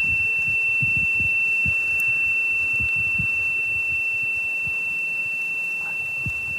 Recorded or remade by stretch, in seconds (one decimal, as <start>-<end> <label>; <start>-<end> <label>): 0.0-6.6 recorded